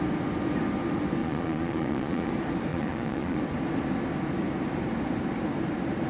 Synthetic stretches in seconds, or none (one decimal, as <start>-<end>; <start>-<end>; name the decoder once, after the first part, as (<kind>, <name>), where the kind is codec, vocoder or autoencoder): 1.2-2.3 (vocoder, Vocos); 2.7-3.4